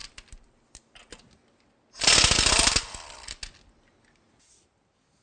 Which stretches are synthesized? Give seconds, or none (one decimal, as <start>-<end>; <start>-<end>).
none